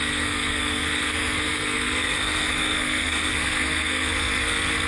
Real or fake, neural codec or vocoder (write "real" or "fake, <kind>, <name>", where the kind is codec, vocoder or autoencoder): fake, codec, SNAC